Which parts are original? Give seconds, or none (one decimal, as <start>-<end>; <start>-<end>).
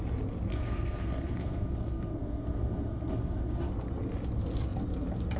0.0-0.5; 3.7-5.4